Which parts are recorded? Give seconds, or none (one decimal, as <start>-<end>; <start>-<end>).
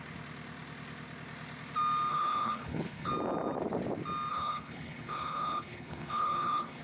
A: 0.0-2.1; 3.1-4.3